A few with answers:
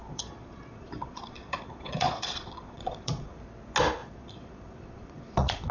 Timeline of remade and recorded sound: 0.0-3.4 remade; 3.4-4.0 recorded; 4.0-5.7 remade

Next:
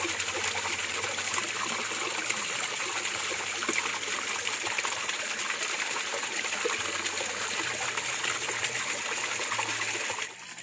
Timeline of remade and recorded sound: 0.0-10.6 recorded

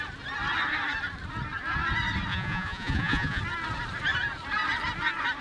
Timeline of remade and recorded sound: 0.0-2.3 recorded; 2.3-3.4 remade; 3.4-5.4 recorded

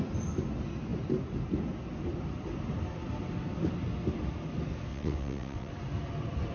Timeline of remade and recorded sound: 0.0-4.9 recorded; 4.9-5.7 remade; 5.7-6.5 recorded

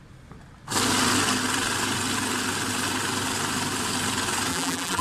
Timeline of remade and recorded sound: 0.0-4.5 recorded; 4.5-5.0 remade